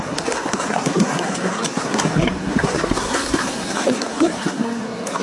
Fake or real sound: fake